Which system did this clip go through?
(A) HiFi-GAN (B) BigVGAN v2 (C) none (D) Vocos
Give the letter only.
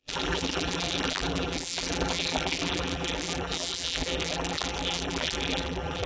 B